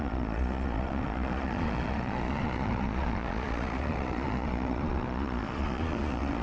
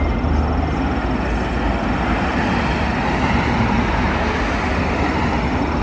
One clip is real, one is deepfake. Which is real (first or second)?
second